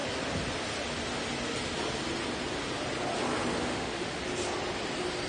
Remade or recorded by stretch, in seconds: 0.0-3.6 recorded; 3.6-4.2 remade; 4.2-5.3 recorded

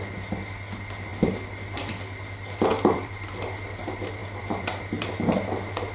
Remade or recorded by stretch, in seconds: 0.0-2.7 recorded; 2.7-3.3 remade; 3.3-4.2 recorded; 4.2-5.1 remade; 5.1-5.9 recorded

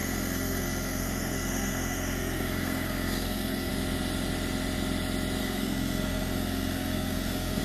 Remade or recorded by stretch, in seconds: 0.0-3.7 remade; 3.7-5.4 recorded; 5.4-7.6 remade

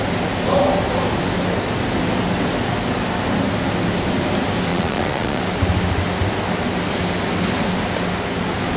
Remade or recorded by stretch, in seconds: 0.0-4.7 recorded; 4.7-5.4 remade; 5.4-8.8 recorded

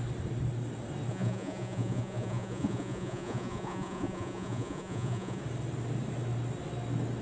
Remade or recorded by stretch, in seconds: 0.0-1.1 recorded; 1.1-5.4 remade; 5.4-7.2 recorded

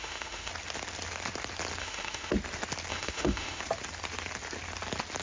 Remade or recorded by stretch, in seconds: 0.0-0.5 remade; 0.5-1.8 recorded; 1.8-2.3 remade; 2.3-2.9 recorded; 2.9-3.6 remade; 3.6-5.2 recorded